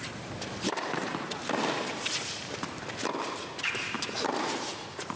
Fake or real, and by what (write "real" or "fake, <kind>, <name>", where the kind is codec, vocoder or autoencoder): real